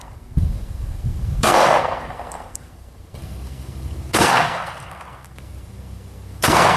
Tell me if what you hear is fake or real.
fake